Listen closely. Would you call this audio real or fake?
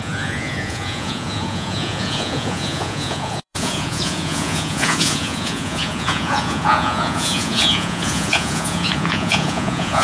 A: fake